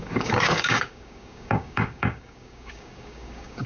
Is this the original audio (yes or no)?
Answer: no